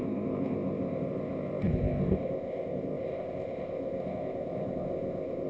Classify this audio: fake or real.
fake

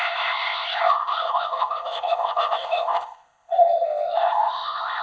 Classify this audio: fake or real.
fake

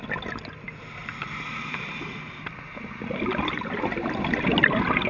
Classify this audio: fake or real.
real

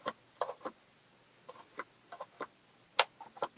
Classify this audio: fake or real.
real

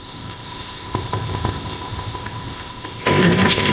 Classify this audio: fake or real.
fake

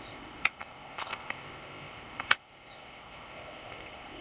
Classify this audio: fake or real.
fake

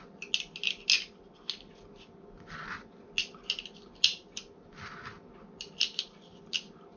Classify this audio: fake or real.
real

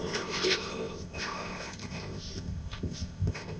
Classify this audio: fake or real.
fake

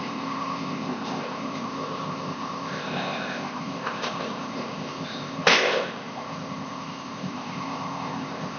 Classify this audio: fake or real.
fake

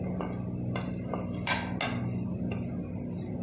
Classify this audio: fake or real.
real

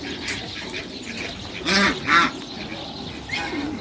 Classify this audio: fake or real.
real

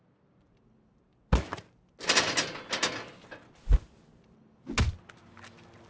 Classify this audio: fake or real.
real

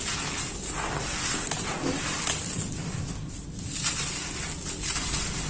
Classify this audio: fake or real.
real